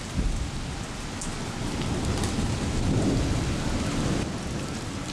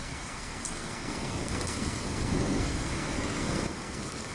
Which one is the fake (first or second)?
second